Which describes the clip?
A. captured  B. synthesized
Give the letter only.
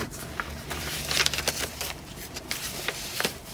B